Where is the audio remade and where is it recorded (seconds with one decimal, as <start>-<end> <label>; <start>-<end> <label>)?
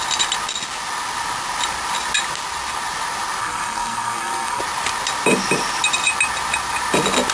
0.0-3.4 recorded; 3.4-4.6 remade; 4.6-7.3 recorded